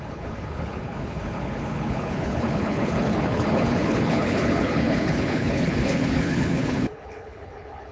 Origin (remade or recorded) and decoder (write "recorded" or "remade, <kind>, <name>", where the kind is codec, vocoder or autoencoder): remade, codec, HILCodec